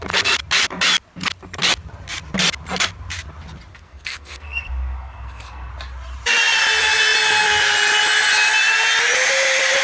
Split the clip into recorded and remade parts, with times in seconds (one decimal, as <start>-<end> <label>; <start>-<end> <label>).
0.0-3.7 recorded; 3.7-5.7 remade; 5.7-9.8 recorded